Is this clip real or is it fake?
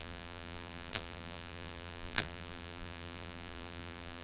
fake